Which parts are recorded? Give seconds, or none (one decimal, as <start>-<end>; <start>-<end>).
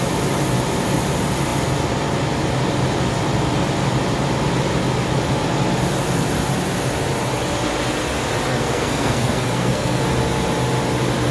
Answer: 0.0-8.5; 10.0-11.3